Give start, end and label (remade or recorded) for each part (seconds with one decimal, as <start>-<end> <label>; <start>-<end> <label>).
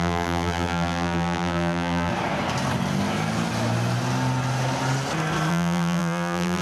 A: 0.0-2.1 remade; 2.1-5.5 recorded; 5.5-6.6 remade